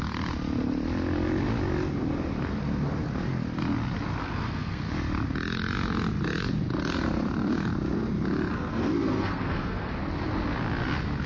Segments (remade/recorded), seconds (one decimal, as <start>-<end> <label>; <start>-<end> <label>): 0.0-4.2 recorded; 4.2-4.8 remade; 4.8-8.5 recorded; 8.5-9.9 remade; 9.9-11.3 recorded